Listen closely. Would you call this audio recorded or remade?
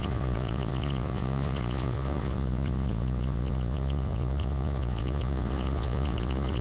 remade